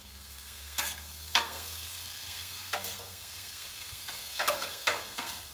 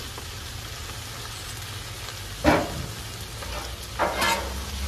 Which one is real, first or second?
second